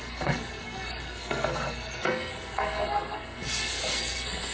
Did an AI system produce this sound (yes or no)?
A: yes